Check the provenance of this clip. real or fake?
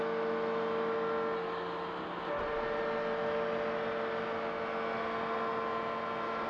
real